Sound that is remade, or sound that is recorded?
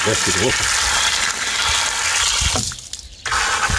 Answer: recorded